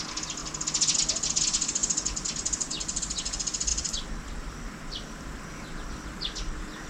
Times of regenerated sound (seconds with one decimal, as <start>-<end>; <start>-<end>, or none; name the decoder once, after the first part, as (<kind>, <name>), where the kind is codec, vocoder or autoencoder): none